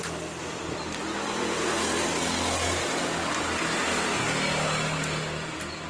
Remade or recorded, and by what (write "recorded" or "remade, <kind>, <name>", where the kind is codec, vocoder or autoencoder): recorded